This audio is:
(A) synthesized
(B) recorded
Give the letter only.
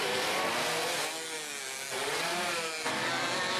B